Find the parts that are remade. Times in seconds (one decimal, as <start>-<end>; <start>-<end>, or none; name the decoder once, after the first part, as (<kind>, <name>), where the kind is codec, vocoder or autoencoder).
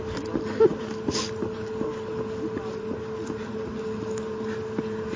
none